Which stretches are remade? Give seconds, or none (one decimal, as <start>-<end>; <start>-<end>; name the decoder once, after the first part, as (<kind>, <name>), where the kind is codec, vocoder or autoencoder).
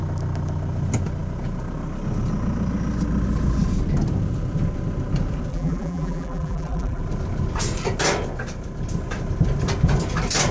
5.5-7.0 (vocoder, BigVGAN v2)